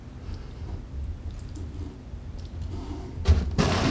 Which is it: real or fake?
real